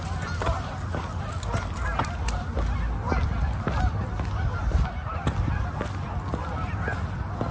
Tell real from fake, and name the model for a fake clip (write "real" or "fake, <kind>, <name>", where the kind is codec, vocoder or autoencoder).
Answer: real